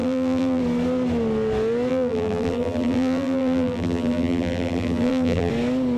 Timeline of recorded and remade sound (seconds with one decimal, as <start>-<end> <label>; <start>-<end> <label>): 0.0-0.6 remade; 0.6-1.9 recorded; 1.9-5.5 remade; 5.5-6.0 recorded